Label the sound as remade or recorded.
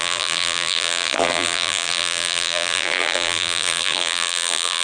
remade